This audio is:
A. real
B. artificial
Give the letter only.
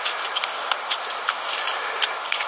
A